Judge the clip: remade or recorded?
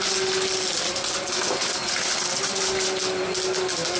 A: recorded